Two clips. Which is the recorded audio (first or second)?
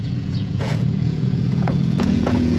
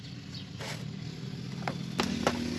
second